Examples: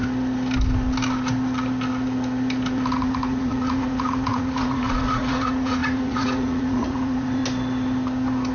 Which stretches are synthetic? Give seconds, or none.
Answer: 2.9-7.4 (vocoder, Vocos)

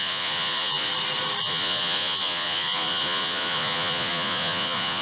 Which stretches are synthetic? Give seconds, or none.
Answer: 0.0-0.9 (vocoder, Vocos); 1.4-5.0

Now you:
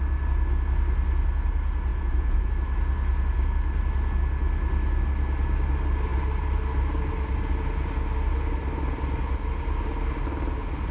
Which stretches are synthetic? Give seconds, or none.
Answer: 1.9-2.5 (vocoder, Vocos)

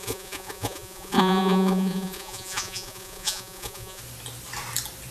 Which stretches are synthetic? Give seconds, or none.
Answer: 0.0-4.0 (vocoder, Vocos)

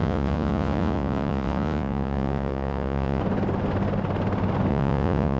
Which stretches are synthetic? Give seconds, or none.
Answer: 0.0-3.2 (vocoder, Vocos); 4.7-5.4

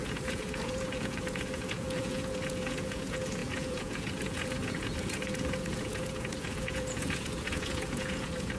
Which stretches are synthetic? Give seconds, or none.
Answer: 0.0-8.6 (vocoder, Vocos)

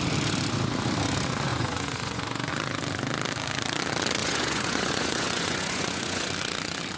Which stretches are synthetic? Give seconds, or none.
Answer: 1.5-2.5 (vocoder, Vocos); 4.2-6.3

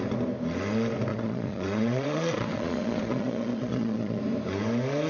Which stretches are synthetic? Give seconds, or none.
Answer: 1.1-4.2 (vocoder, Vocos)